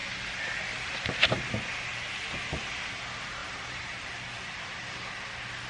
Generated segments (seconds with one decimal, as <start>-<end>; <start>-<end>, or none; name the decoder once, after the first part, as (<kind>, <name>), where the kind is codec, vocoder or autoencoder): 1.9-2.5 (vocoder, BigVGAN v2); 3.4-5.0